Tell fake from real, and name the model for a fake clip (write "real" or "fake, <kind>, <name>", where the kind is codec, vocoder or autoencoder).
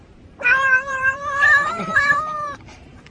fake, vocoder, BigVGAN v2